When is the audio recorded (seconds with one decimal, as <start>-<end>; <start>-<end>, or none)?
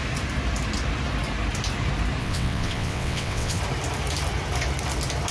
0.0-2.2; 3.6-5.3